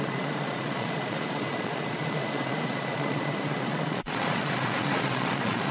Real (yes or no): no